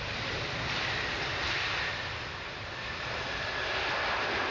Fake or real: fake